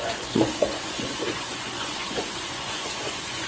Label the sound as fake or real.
fake